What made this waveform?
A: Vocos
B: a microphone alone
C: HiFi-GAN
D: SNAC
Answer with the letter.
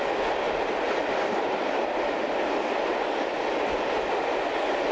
B